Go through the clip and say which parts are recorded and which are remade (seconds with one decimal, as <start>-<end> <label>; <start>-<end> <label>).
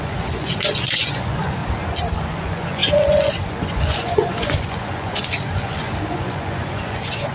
0.0-1.6 remade; 1.6-2.2 recorded; 2.2-7.3 remade